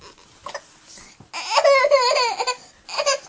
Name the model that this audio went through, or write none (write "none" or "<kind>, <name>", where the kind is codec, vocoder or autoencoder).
none